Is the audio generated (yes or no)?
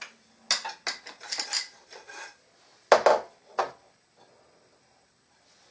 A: no